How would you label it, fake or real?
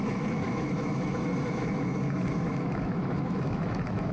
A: fake